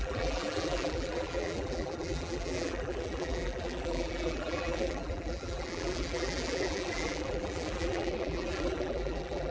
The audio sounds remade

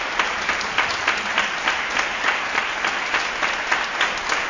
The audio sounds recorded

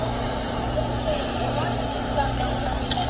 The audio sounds recorded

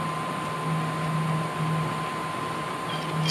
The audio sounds recorded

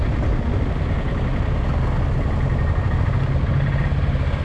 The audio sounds recorded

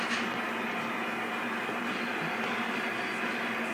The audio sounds recorded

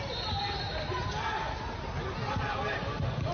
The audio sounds recorded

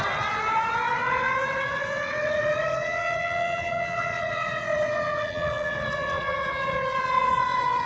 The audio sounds remade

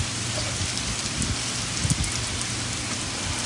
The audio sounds recorded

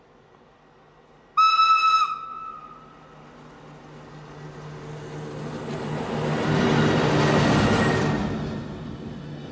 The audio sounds recorded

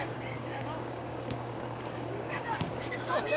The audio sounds remade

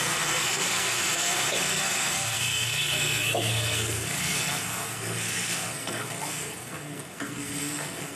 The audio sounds remade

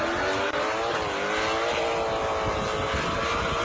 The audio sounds recorded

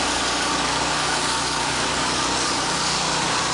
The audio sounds remade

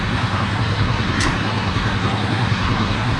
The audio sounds remade